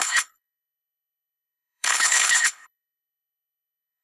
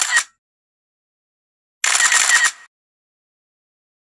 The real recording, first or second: second